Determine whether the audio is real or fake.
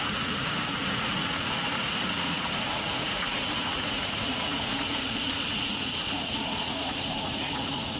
fake